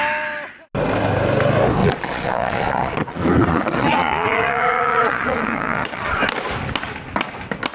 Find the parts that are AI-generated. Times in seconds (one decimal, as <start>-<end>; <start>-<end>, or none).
1.8-6.2